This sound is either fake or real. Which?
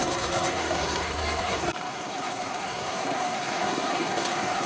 fake